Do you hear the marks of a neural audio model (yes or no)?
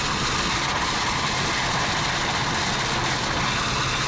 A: no